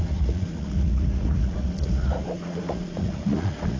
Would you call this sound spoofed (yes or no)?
yes